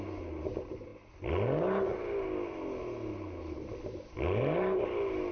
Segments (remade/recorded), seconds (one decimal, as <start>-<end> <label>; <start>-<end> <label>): 0.0-5.3 recorded